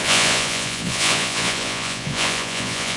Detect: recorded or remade remade